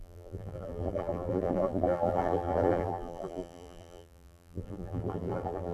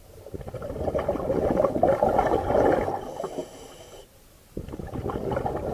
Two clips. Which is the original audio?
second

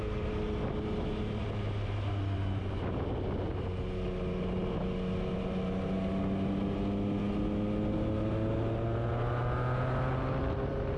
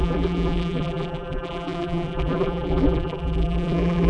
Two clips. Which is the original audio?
first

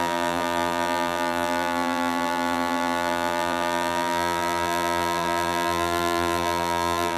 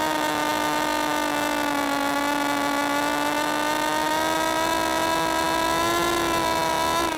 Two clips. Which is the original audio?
second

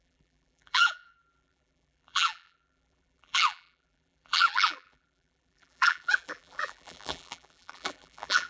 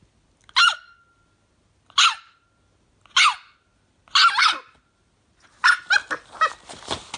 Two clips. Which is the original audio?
second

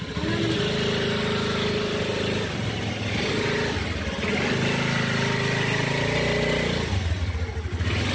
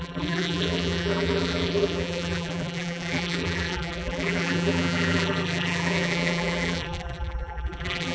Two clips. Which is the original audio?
first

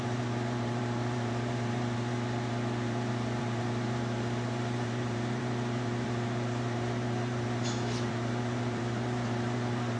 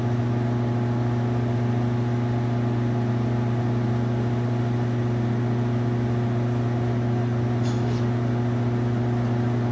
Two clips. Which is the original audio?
second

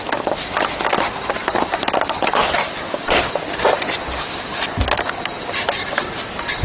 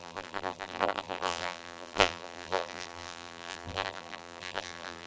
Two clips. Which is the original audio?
first